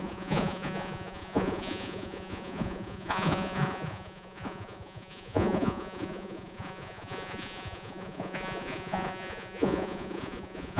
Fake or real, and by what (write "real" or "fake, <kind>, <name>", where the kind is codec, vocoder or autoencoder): fake, vocoder, Vocos